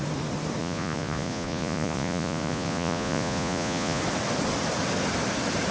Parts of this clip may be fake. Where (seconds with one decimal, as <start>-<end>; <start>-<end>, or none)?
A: 0.6-4.0